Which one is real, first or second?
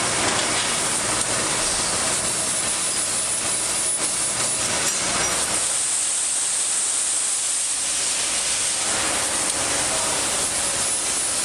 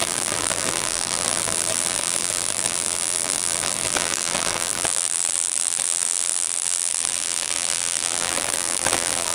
first